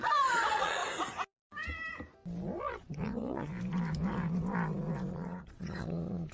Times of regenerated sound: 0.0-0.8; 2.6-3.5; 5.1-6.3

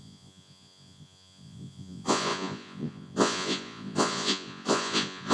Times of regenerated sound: 0.0-5.3

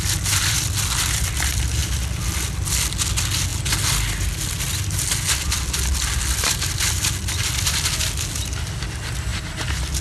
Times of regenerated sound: none